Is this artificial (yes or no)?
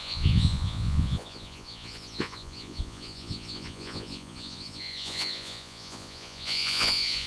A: yes